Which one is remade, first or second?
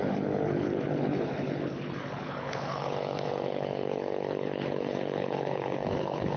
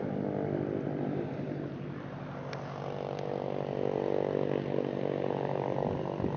first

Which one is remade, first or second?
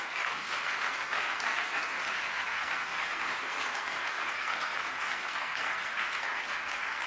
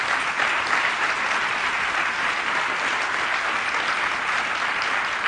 first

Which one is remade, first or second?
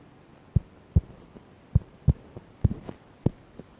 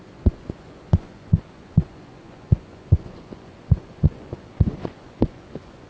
second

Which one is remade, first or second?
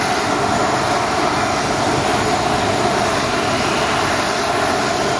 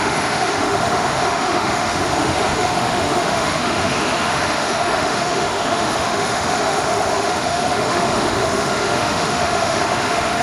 second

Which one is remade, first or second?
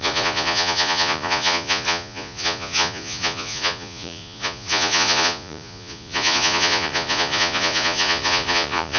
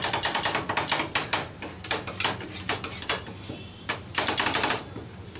first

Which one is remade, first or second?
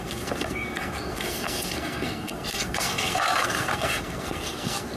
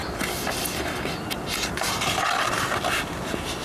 first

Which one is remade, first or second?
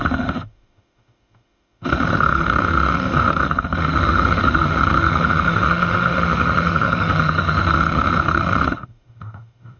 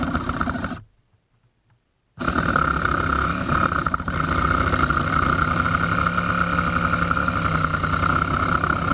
first